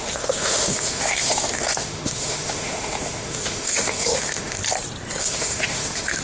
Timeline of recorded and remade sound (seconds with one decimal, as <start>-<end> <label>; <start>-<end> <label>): 0.0-4.6 remade; 4.6-5.2 recorded; 5.2-6.2 remade